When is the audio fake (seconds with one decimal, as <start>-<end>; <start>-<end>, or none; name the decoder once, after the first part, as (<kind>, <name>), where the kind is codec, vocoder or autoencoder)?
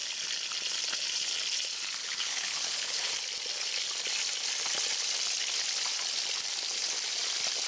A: 2.0-3.1 (codec, HILCodec)